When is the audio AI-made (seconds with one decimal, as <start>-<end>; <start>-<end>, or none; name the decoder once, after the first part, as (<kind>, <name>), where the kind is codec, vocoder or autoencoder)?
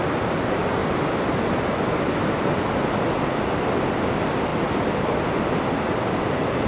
none